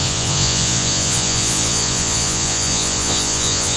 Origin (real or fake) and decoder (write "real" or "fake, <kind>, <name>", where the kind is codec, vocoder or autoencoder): fake, vocoder, Vocos